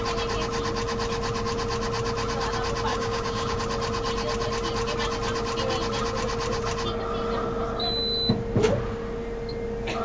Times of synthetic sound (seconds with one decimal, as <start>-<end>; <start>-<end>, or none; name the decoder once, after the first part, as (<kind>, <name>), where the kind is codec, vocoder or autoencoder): 2.9-3.6 (codec, DAC)